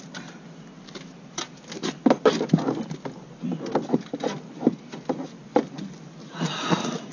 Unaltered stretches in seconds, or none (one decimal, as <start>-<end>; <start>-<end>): 0.0-6.2